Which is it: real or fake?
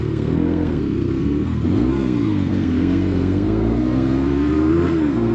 fake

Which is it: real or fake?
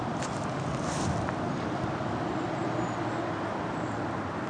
real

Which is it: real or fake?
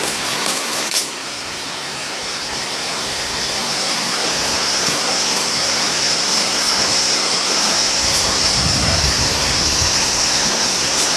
fake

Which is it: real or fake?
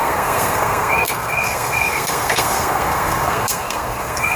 fake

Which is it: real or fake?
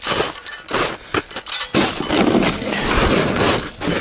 real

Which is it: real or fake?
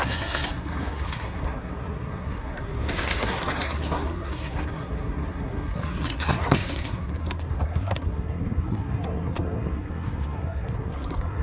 fake